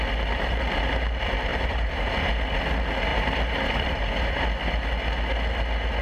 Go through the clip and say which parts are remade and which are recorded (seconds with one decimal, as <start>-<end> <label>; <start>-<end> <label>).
0.0-1.5 recorded; 1.5-2.1 remade; 2.1-3.1 recorded; 3.1-4.4 remade; 4.4-6.0 recorded